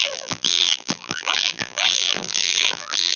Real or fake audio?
fake